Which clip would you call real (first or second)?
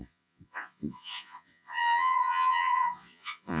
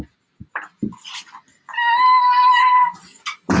second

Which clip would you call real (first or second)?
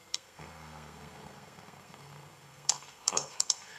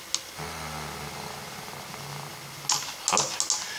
second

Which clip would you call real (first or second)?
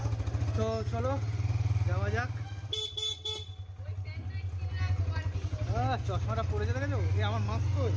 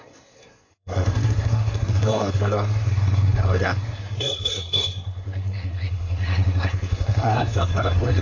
first